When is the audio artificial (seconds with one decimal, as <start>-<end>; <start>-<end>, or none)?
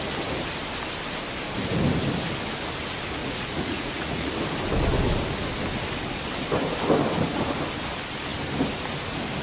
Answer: 3.2-4.3